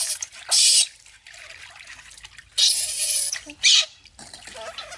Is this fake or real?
real